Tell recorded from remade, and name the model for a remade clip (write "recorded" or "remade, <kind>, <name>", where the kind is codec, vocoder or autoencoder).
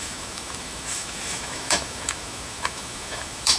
remade, autoencoder, DAC-VAE